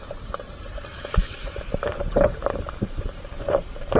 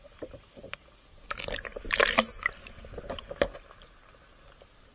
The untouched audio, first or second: second